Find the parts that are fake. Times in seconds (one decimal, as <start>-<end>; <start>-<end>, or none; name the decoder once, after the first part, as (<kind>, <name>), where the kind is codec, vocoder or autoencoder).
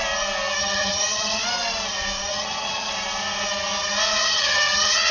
0.6-1.4 (vocoder, HiFi-GAN); 2.3-2.9; 4.2-5.1